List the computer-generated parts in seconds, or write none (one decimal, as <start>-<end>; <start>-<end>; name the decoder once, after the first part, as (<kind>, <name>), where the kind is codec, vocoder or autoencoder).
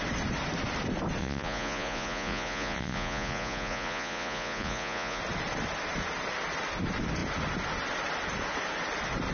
1.2-5.2 (vocoder, Vocos)